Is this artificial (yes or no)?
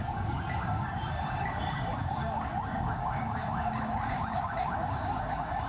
yes